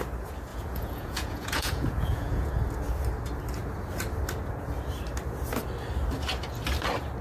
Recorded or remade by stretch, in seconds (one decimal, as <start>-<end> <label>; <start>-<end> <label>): 0.0-0.5 recorded; 0.5-2.5 remade; 2.5-7.2 recorded